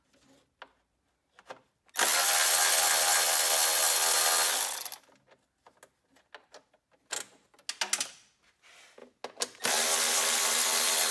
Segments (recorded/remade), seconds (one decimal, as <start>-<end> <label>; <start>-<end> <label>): 0.0-11.1 recorded